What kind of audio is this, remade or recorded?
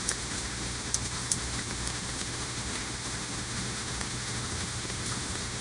remade